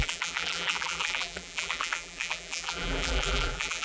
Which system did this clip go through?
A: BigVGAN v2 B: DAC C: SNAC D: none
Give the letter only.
A